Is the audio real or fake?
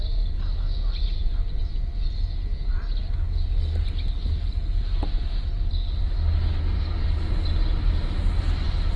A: real